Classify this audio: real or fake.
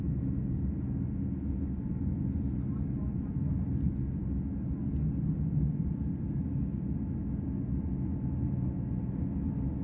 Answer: real